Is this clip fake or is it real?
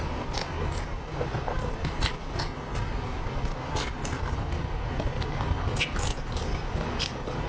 real